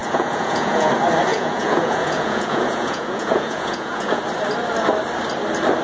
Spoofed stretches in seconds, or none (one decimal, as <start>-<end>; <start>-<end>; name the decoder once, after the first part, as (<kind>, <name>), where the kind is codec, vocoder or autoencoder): 0.0-0.9 (vocoder, Vocos); 1.3-4.2